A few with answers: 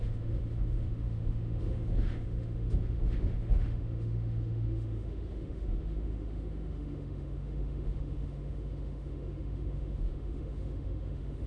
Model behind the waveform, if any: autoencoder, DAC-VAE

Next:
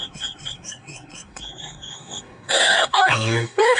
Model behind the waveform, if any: codec, SNAC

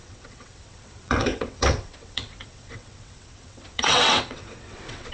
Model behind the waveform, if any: vocoder, WaveNeXt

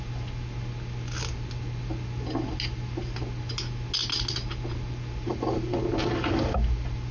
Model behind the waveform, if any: none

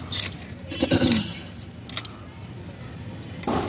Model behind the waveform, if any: none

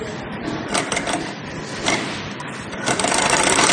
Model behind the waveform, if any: vocoder, BigVGAN v2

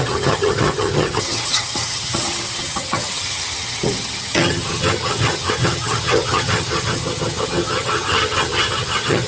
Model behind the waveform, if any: vocoder, HiFi-GAN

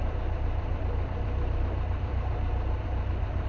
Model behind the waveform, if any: vocoder, BigVGAN v2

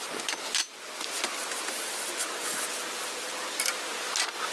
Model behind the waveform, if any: none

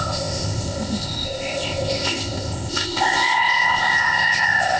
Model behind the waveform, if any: codec, ZipCodec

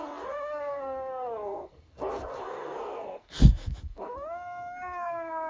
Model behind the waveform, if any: codec, SNAC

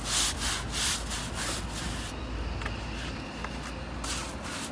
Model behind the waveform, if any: none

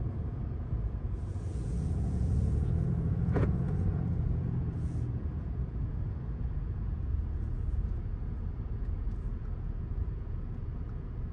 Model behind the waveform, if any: vocoder, Vocos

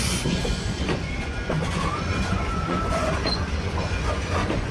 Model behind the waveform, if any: vocoder, Vocos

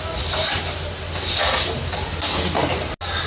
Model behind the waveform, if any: none